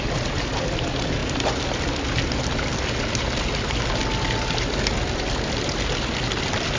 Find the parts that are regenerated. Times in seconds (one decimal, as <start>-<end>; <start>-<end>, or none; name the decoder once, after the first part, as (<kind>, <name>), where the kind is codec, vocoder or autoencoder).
none